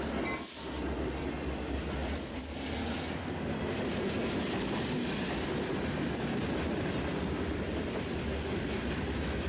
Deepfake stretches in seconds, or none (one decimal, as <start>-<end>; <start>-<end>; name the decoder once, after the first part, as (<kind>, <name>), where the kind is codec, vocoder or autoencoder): none